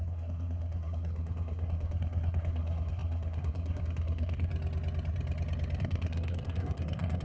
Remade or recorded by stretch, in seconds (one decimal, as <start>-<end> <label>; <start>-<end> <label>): 0.0-4.5 remade; 4.5-5.8 recorded; 5.8-7.2 remade